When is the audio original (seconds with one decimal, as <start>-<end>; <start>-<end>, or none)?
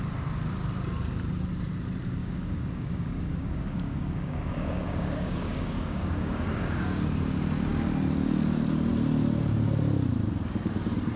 0.0-2.2; 7.0-11.2